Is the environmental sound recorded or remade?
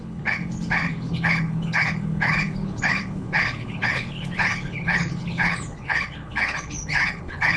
remade